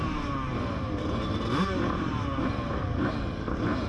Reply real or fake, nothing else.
fake